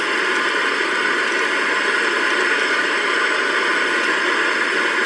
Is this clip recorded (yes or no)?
yes